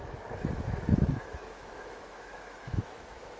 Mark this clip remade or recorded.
remade